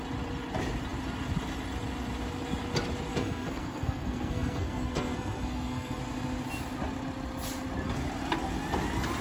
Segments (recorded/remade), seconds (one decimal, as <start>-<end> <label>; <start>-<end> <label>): 0.0-3.1 recorded; 3.1-6.0 remade; 6.0-9.2 recorded